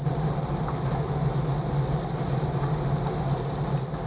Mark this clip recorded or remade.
recorded